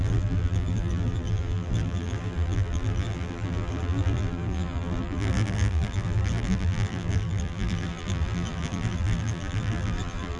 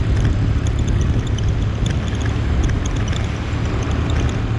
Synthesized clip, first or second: first